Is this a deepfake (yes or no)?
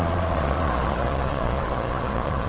yes